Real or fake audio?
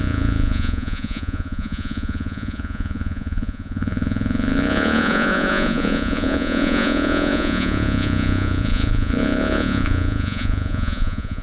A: fake